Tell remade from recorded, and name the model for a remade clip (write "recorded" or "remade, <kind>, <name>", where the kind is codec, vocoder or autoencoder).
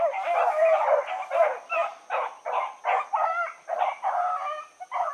recorded